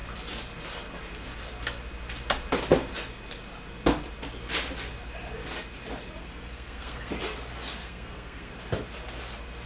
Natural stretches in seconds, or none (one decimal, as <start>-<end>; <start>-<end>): 0.0-6.2; 7.1-7.8; 8.5-9.7